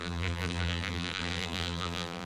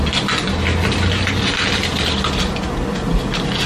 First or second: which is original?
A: second